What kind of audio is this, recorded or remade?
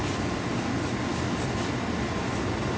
recorded